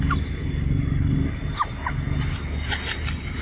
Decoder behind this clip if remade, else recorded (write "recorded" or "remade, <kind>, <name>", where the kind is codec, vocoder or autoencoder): recorded